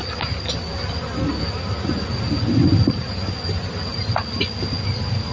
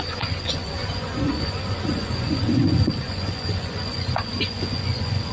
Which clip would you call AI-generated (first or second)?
second